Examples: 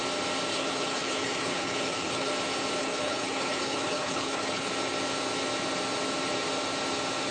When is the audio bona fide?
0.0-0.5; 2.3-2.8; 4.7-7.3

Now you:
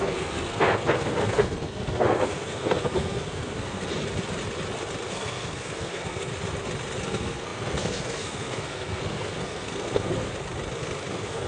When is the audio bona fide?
3.9-5.1; 6.3-7.0; 10.3-11.1

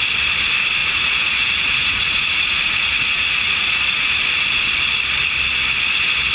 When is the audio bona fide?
0.0-0.8; 4.6-6.3

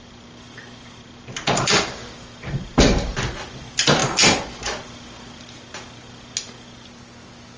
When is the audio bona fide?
0.0-7.6